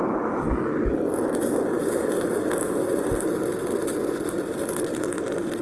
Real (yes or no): yes